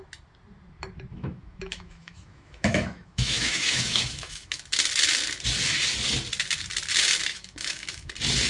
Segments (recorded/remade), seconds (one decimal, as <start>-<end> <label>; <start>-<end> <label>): 0.0-1.1 recorded; 1.1-4.6 remade; 4.6-7.3 recorded; 7.3-8.1 remade; 8.1-8.5 recorded